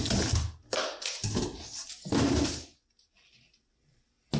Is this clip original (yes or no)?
yes